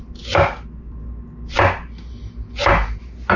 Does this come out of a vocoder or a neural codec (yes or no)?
no